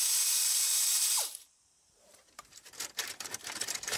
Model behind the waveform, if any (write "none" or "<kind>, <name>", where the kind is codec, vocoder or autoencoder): vocoder, BigVGAN v2